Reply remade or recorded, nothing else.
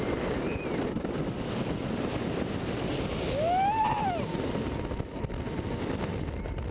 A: recorded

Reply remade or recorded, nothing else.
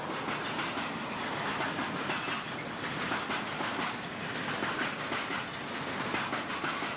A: recorded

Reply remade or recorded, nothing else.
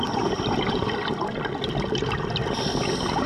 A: recorded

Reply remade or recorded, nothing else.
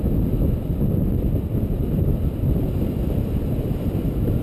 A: recorded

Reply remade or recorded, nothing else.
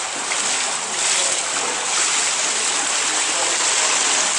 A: recorded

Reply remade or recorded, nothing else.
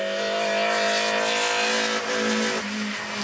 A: recorded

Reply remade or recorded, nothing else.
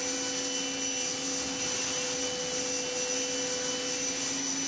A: recorded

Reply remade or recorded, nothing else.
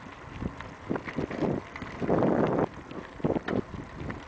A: recorded